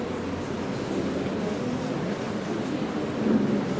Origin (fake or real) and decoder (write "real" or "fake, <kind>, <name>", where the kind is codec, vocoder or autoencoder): real